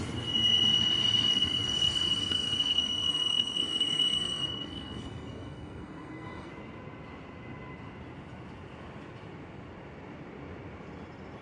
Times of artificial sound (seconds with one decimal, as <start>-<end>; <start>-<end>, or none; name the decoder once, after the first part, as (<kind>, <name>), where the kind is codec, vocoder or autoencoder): 1.3-6.5 (codec, SNAC)